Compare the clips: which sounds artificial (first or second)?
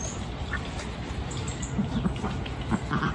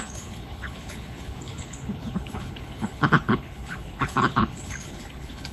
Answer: second